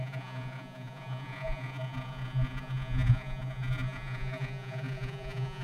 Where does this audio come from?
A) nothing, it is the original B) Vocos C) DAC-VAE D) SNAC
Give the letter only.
B